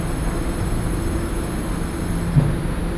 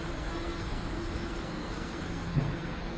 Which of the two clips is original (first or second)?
first